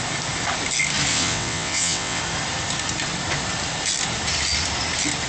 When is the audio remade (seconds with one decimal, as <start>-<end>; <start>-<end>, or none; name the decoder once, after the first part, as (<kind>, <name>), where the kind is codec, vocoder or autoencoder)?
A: 1.1-2.2 (vocoder, WaveNeXt)

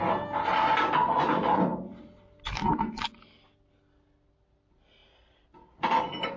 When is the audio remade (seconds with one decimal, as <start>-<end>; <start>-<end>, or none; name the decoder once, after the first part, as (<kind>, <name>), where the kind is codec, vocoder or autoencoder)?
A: none

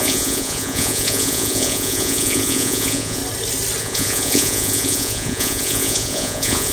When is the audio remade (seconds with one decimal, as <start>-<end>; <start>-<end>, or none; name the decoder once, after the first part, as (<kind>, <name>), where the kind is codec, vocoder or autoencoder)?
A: 0.0-3.2 (vocoder, Vocos); 3.8-6.7

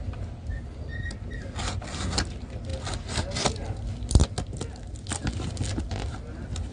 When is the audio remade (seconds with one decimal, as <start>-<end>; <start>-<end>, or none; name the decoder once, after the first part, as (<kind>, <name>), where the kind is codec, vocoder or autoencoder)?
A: none

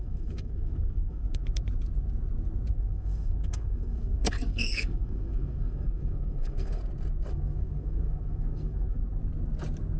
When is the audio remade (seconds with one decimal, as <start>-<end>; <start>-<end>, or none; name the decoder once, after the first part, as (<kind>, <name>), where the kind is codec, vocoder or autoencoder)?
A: 0.0-1.4 (codec, SNAC); 2.7-6.8; 7.3-9.0

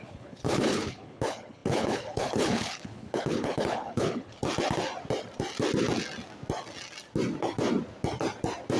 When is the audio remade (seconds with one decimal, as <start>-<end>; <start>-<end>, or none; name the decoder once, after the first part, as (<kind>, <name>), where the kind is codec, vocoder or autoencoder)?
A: 0.0-4.4 (codec, HILCodec)

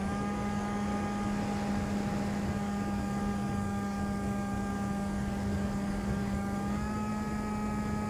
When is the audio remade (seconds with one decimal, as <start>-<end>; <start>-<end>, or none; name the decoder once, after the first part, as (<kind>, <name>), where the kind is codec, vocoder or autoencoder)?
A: 0.0-0.9 (codec, DAC); 2.4-7.1

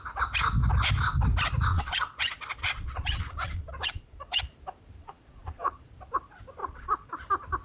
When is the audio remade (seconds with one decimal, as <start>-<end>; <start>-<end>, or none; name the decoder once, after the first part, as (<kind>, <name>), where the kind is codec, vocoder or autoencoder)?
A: 1.7-4.4 (vocoder, Vocos); 5.0-5.9; 6.6-7.1